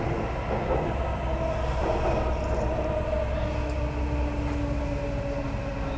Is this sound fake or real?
real